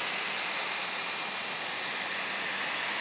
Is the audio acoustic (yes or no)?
yes